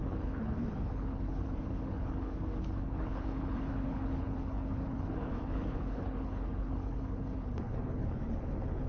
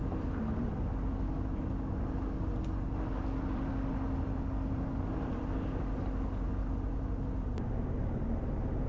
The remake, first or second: first